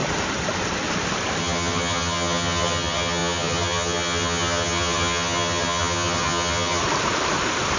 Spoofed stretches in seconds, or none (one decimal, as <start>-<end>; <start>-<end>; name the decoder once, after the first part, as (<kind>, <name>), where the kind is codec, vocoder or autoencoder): 1.4-6.8 (vocoder, HiFi-GAN)